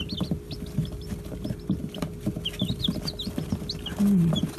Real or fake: real